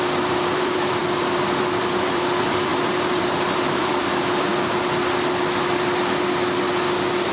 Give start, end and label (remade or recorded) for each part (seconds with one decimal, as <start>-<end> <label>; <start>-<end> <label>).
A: 0.0-4.5 remade; 4.5-7.3 recorded